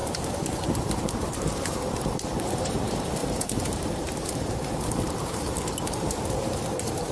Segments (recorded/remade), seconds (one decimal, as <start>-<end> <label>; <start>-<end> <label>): 0.0-7.1 remade